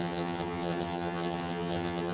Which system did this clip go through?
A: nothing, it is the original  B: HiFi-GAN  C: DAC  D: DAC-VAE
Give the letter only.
B